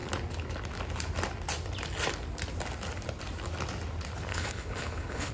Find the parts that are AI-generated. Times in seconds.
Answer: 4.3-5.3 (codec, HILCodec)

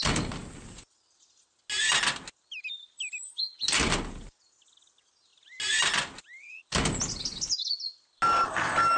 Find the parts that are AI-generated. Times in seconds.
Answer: none

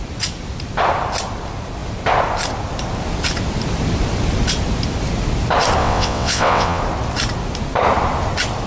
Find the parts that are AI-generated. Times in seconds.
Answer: 5.8-6.8 (vocoder, WaveNeXt)